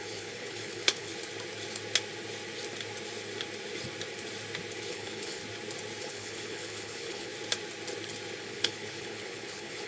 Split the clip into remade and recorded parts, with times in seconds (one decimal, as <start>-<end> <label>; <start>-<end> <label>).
0.0-1.1 remade; 1.1-4.9 recorded; 4.9-5.4 remade; 5.4-6.0 recorded; 6.0-7.3 remade; 7.3-8.4 recorded; 8.4-9.9 remade

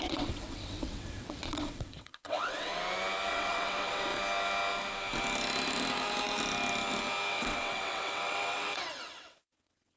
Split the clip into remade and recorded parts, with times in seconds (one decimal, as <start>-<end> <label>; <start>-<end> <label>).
0.0-2.7 remade; 2.7-3.3 recorded; 3.3-4.1 remade; 4.1-7.3 recorded; 7.3-10.0 remade

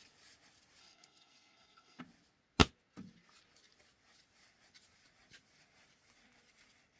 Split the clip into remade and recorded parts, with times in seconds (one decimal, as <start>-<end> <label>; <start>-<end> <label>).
0.0-0.8 recorded; 0.8-2.0 remade; 2.0-7.0 recorded

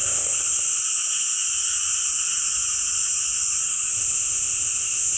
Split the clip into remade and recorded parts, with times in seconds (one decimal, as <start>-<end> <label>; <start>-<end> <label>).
0.0-0.8 remade; 0.8-3.9 recorded; 3.9-5.2 remade

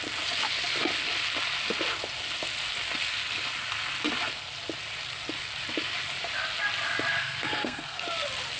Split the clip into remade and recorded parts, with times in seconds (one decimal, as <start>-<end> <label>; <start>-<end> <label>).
0.0-7.2 recorded; 7.2-8.0 remade; 8.0-8.6 recorded

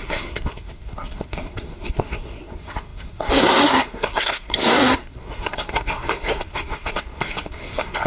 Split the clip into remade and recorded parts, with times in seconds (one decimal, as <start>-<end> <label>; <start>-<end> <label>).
0.0-8.1 remade

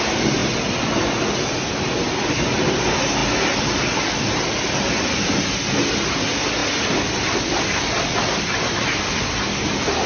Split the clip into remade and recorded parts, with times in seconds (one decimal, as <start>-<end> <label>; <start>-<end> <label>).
0.0-6.6 recorded; 6.6-10.1 remade

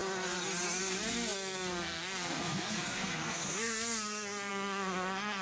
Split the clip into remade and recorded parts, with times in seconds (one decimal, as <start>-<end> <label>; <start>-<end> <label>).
0.0-0.8 recorded; 0.8-5.4 remade